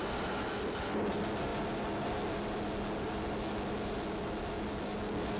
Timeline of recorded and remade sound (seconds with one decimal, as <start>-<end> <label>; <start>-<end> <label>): 0.0-5.4 recorded

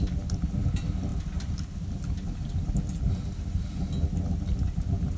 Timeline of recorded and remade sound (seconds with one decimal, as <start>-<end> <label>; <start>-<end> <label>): 0.0-5.2 recorded

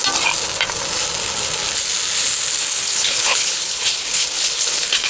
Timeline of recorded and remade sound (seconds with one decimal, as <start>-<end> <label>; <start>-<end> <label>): 0.0-2.6 recorded; 2.6-5.1 remade

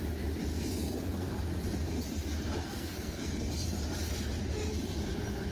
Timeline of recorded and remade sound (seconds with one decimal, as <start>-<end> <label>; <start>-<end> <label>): 0.0-0.5 recorded; 0.5-1.4 remade; 1.4-2.6 recorded; 2.6-3.5 remade; 3.5-5.5 recorded

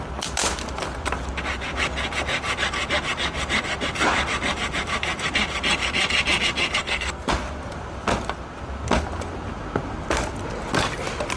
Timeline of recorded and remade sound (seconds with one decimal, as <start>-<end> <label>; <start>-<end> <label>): 0.0-6.8 recorded; 6.8-7.3 remade; 7.3-11.4 recorded

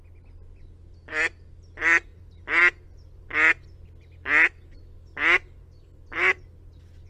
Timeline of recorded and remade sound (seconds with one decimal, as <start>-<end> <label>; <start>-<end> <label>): 0.0-7.1 recorded